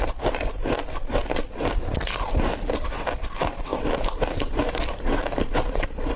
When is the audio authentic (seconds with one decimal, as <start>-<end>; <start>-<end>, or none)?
0.0-6.2